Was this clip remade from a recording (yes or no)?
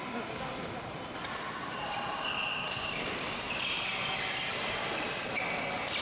no